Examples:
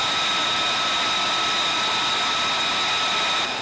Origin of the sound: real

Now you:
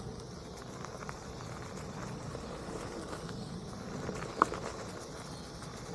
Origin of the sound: real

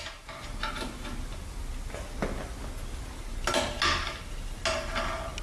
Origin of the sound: real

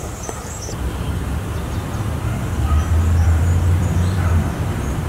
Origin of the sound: fake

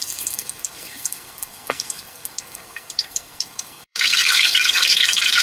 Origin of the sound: fake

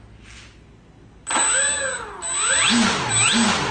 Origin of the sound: real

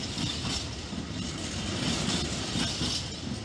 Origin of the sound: fake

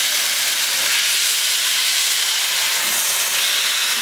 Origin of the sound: real